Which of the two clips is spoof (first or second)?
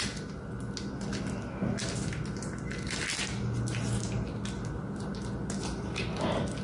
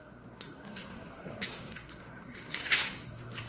second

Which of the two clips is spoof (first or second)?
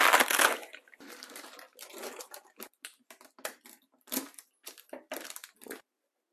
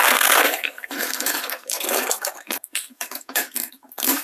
second